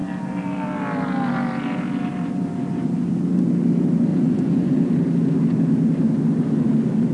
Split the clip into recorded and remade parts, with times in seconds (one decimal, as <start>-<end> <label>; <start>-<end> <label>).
0.0-4.1 recorded; 4.1-4.9 remade; 4.9-7.1 recorded